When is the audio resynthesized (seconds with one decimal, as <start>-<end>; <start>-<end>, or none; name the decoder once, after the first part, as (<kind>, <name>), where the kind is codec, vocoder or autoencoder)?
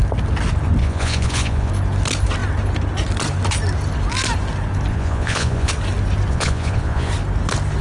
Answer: 0.8-1.7 (vocoder, Vocos); 4.9-5.7; 6.3-7.1